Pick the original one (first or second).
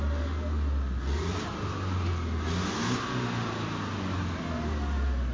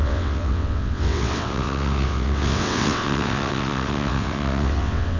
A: first